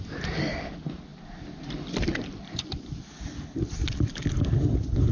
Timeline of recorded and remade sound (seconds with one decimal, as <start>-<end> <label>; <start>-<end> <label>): 0.0-5.1 recorded